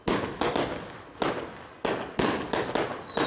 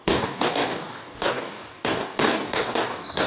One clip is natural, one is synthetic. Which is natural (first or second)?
first